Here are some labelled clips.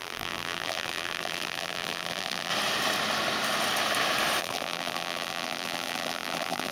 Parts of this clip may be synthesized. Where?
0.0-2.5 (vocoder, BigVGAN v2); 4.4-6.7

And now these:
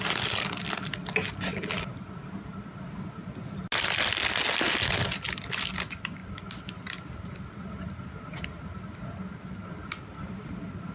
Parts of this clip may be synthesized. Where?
none